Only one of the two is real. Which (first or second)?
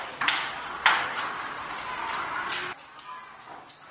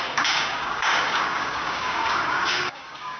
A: first